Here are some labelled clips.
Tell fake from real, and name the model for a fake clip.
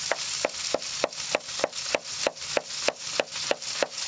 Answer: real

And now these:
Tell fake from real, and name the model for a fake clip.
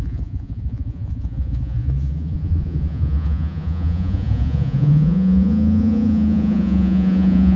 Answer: fake, vocoder, Vocos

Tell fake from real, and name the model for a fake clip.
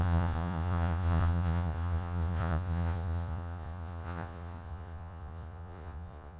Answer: fake, vocoder, Vocos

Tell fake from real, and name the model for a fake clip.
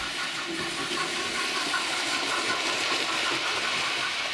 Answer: real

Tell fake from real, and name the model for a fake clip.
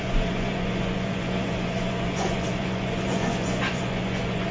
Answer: fake, vocoder, Vocos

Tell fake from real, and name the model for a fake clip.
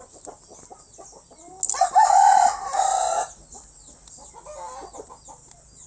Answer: real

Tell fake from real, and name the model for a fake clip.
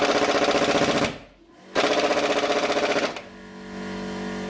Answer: real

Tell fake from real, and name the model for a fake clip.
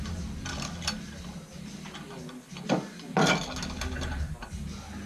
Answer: real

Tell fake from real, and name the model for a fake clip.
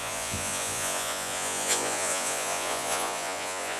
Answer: fake, vocoder, Vocos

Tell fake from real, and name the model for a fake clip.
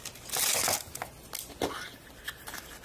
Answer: real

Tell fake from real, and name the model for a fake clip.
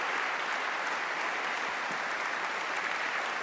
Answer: real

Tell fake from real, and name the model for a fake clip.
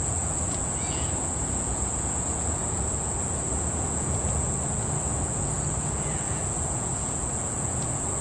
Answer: fake, vocoder, Vocos